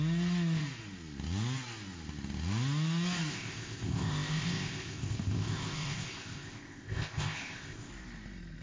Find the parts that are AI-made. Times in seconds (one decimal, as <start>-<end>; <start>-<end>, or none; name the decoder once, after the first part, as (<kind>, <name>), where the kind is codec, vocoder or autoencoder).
3.3-7.9 (codec, ZipCodec)